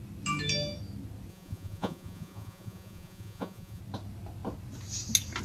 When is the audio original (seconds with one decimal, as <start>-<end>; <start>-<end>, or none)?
0.0-1.3; 3.8-5.4